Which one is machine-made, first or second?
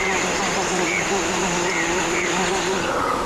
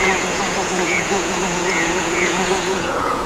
second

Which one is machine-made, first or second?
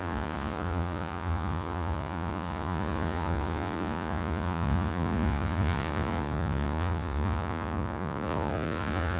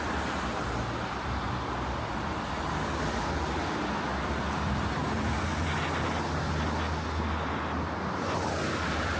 first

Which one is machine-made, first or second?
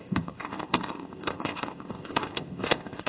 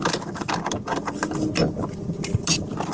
first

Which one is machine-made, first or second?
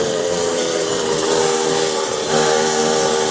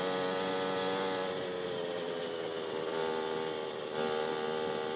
first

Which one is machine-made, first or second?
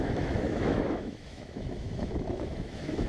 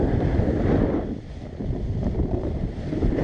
first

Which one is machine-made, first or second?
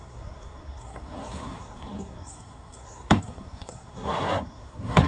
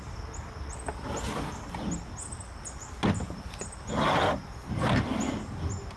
first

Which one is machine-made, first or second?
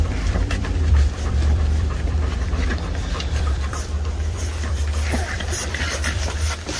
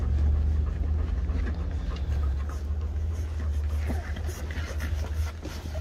first